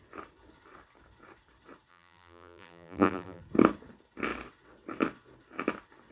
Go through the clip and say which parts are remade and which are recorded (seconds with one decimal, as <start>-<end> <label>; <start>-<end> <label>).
0.0-1.9 recorded; 1.9-3.4 remade; 3.4-6.1 recorded